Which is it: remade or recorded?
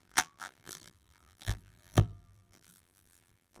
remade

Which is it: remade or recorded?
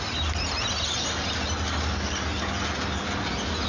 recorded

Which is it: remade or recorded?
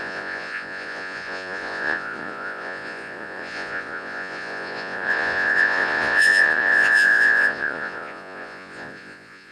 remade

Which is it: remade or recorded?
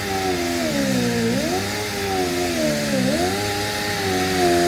recorded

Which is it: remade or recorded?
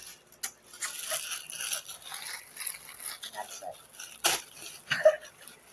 recorded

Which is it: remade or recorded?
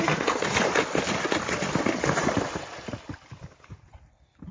recorded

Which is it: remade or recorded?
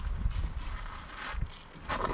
recorded